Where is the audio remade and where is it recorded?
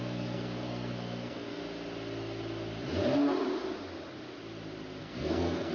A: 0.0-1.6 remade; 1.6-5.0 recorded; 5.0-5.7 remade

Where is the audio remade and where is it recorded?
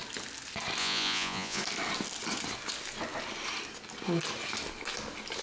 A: 0.0-0.8 recorded; 0.8-1.6 remade; 1.6-5.4 recorded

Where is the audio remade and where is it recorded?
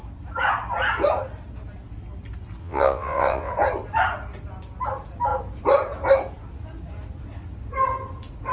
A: 0.0-2.6 recorded; 2.6-3.5 remade; 3.5-8.5 recorded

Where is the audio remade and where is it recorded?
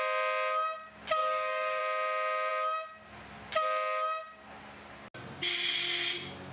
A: 0.0-1.2 recorded; 1.2-1.8 remade; 1.8-6.5 recorded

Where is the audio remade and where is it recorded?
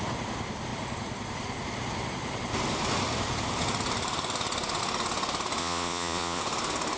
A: 0.0-5.6 recorded; 5.6-6.4 remade; 6.4-7.0 recorded